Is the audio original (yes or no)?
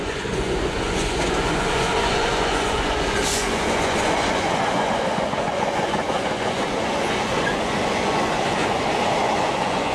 no